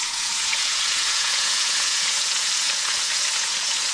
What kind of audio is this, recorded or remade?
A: remade